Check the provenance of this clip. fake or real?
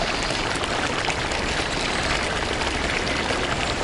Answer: real